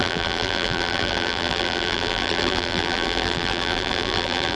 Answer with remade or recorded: remade